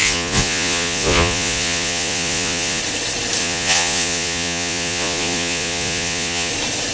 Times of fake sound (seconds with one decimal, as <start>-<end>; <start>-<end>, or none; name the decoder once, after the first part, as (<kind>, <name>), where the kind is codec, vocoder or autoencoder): 0.0-2.8 (vocoder, Vocos); 3.4-6.5